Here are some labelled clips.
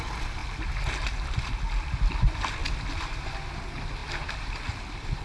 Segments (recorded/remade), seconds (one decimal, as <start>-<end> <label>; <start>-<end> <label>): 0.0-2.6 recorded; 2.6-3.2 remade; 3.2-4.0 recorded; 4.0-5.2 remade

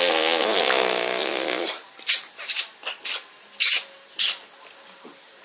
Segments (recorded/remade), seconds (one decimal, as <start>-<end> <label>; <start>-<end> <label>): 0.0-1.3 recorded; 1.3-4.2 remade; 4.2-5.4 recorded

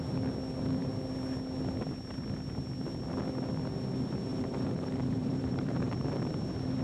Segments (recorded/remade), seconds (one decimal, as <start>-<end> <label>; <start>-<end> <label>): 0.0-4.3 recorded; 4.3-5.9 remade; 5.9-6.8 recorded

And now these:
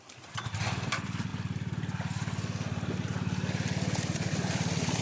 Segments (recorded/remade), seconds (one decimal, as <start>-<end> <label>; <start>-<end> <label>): 0.0-1.3 remade; 1.3-4.3 recorded; 4.3-5.0 remade